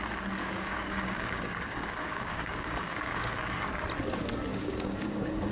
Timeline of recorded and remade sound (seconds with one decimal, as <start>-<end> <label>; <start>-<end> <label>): 0.0-0.4 recorded; 0.4-3.7 remade; 3.7-4.5 recorded; 4.5-5.5 remade